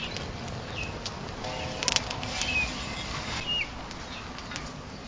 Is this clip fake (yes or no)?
no